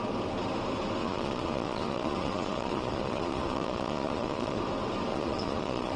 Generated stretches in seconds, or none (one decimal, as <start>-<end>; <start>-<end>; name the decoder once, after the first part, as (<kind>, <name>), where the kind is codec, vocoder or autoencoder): 1.0-4.6 (vocoder, Vocos); 5.1-6.0